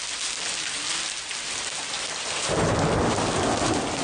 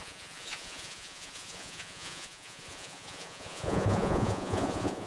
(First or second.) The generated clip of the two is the second